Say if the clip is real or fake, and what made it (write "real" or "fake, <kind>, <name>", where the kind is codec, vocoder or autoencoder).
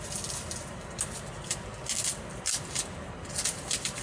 real